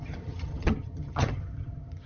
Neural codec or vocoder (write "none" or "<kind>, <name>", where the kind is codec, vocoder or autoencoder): vocoder, HiFi-GAN